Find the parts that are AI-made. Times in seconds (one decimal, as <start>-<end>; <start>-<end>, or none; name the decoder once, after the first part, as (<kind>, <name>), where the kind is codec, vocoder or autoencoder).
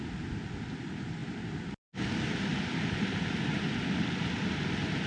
1.2-4.3 (vocoder, BigVGAN v2)